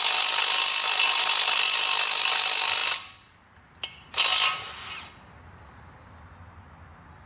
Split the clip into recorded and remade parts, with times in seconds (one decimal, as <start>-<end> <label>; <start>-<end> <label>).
0.0-7.3 recorded